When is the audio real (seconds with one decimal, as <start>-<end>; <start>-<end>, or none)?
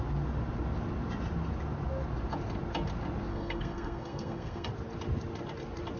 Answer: 0.0-3.3; 4.7-6.0